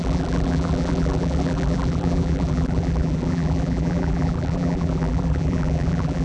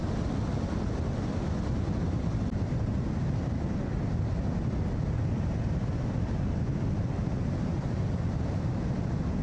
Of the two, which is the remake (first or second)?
first